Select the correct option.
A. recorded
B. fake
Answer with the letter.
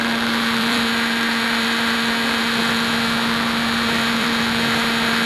B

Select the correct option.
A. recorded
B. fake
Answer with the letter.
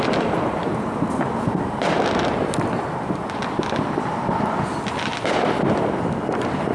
A